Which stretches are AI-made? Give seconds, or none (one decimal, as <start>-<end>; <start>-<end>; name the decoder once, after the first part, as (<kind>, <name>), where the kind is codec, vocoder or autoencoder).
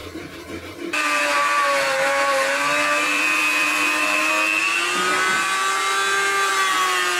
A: 0.0-4.3 (vocoder, BigVGAN v2)